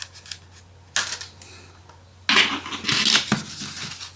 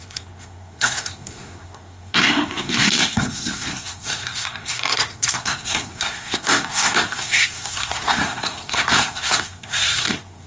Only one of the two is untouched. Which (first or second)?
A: first